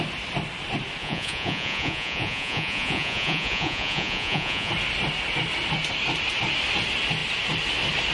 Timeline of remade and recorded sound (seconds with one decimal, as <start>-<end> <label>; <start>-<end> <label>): 0.0-1.0 recorded; 1.0-4.7 remade; 4.7-8.1 recorded